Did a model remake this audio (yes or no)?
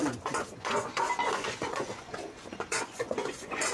yes